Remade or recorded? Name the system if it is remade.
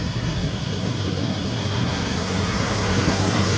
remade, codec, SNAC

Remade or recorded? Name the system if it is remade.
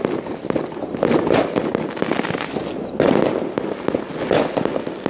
recorded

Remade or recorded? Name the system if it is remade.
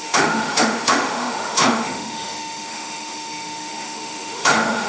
remade, autoencoder, DAC-VAE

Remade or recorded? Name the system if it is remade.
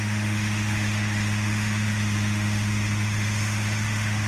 remade, autoencoder, DAC-VAE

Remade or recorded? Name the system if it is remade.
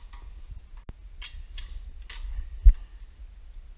recorded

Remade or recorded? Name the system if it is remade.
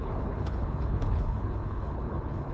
remade, codec, HILCodec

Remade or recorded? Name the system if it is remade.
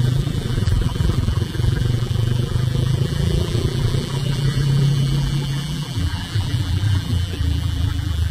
remade, vocoder, BigVGAN v2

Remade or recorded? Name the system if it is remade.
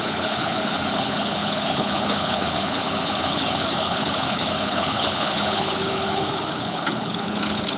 remade, codec, HILCodec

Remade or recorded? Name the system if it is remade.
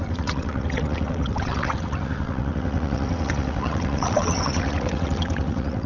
remade, vocoder, WaveNeXt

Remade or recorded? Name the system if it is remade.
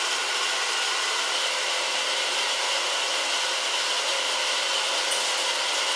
recorded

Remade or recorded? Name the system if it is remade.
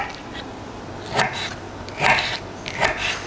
recorded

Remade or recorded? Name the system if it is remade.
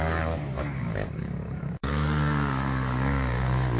remade, codec, DAC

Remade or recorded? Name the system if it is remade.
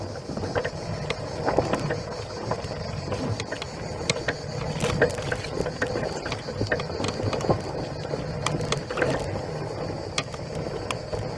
recorded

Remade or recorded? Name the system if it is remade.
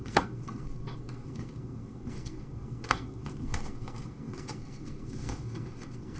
remade, codec, SNAC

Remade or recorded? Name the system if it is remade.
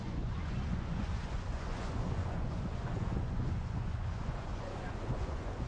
remade, vocoder, Vocos